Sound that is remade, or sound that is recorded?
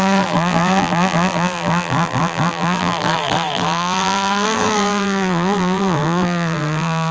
remade